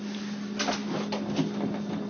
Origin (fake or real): real